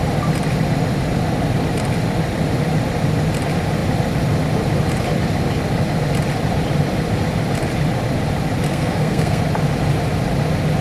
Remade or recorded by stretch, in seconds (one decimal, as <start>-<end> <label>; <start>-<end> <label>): 0.0-8.7 recorded; 8.7-9.4 remade; 9.4-10.8 recorded